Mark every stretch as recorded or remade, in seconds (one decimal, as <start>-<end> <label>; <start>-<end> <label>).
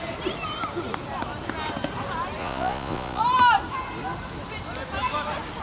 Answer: 0.0-2.4 recorded; 2.4-3.2 remade; 3.2-5.6 recorded